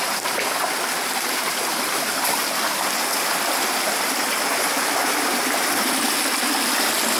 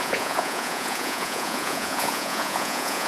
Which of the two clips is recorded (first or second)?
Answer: first